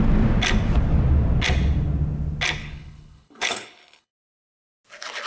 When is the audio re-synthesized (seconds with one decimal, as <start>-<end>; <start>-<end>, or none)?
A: 2.6-4.1